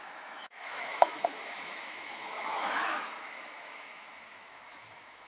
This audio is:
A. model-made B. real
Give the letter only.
A